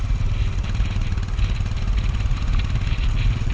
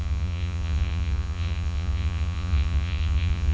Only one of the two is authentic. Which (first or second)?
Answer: first